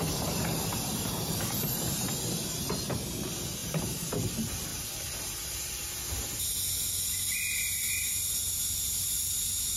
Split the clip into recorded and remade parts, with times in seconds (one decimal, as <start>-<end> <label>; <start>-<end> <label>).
0.0-0.7 recorded; 0.7-2.1 remade; 2.1-3.6 recorded; 3.6-4.1 remade; 4.1-4.7 recorded; 4.7-6.0 remade; 6.0-9.8 recorded

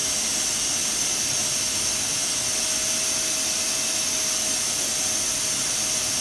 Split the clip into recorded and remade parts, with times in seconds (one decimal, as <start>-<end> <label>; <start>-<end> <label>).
0.0-6.2 recorded

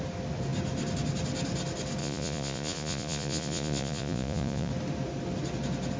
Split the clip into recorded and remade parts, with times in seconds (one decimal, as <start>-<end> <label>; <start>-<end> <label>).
0.0-2.0 recorded; 2.0-4.7 remade; 4.7-6.0 recorded

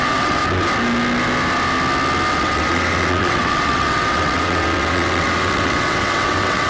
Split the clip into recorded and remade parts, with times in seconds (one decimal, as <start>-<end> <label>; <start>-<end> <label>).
0.0-0.4 remade; 0.4-2.3 recorded; 2.3-6.7 remade

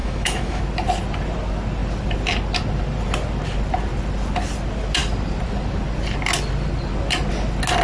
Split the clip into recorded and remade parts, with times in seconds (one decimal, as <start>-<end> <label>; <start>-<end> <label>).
0.0-0.6 remade; 0.6-7.8 recorded

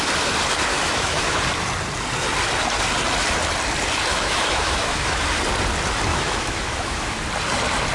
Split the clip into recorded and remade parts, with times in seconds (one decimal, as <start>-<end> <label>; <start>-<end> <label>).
0.0-0.7 recorded; 0.7-1.4 remade; 1.4-4.1 recorded; 4.1-5.4 remade; 5.4-6.1 recorded; 6.1-7.2 remade; 7.2-7.9 recorded